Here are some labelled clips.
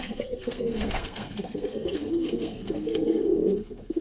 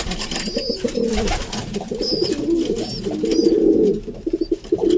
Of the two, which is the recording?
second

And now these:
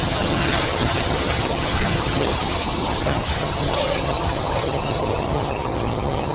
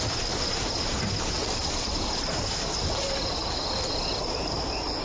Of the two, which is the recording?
second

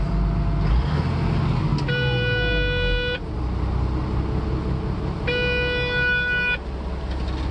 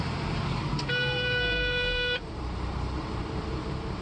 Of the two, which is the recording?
first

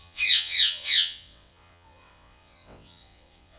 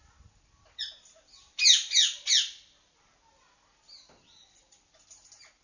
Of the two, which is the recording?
second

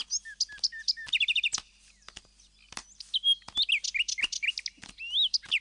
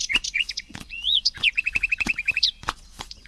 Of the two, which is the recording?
first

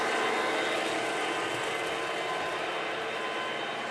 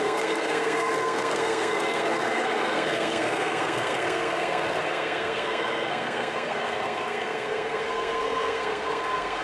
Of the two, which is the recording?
first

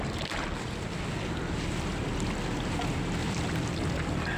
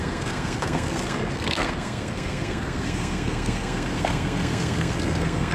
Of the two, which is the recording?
first